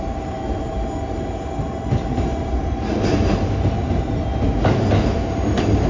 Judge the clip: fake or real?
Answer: real